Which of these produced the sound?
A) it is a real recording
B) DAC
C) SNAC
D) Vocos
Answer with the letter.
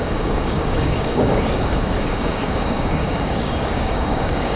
B